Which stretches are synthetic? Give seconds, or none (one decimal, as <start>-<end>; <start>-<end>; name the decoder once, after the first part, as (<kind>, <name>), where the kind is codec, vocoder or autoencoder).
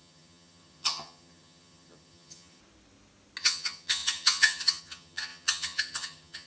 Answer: 0.0-2.6 (vocoder, HiFi-GAN); 3.4-6.5